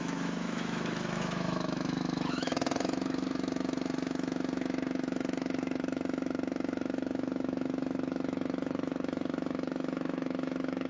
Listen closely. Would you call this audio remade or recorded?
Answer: remade